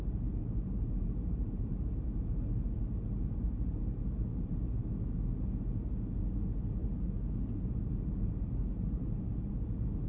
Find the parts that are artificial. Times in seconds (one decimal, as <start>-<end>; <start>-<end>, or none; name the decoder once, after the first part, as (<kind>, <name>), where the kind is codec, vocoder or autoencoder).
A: 0.4-4.6 (vocoder, BigVGAN v2); 6.8-9.7